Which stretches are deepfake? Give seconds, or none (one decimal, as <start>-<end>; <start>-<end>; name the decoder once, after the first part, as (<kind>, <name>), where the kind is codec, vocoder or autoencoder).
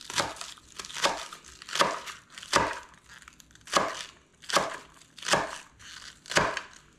none